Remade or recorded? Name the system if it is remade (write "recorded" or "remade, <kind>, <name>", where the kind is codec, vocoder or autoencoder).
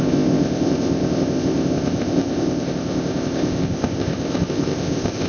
remade, codec, ZipCodec